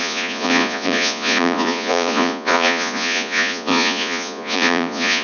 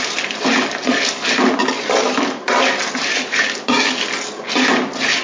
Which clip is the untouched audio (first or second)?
second